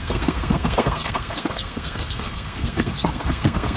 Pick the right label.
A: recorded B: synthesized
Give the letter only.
B